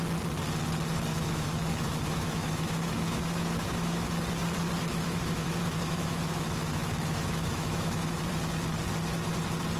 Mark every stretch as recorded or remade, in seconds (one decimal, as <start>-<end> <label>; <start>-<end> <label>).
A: 0.0-1.1 recorded; 1.1-4.1 remade; 4.1-4.9 recorded; 4.9-8.3 remade; 8.3-9.8 recorded